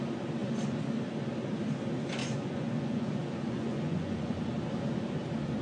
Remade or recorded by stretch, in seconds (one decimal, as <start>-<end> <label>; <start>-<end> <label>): 0.0-2.2 recorded; 2.2-4.4 remade; 4.4-5.6 recorded